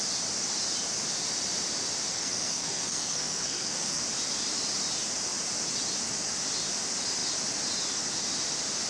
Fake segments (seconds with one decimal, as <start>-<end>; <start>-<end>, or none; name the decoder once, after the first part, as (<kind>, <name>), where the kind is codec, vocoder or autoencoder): 2.1-4.0 (codec, SNAC)